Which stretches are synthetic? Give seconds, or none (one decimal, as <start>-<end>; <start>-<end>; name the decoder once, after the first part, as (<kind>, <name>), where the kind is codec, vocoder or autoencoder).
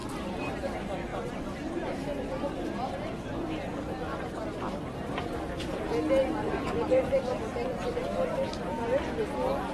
0.0-0.5 (vocoder, BigVGAN v2); 1.1-5.8; 6.2-8.7